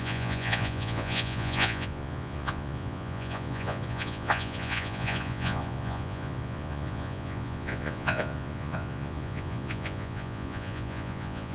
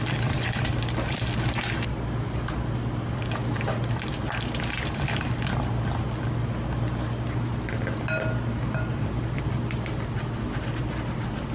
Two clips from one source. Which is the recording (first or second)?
second